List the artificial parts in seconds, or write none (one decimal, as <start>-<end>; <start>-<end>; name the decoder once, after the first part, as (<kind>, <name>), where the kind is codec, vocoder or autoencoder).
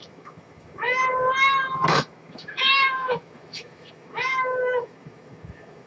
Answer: 0.0-1.0 (autoencoder, DAC-VAE); 1.9-5.9